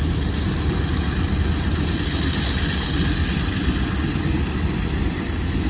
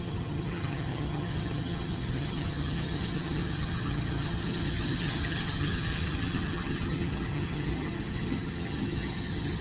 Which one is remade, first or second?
second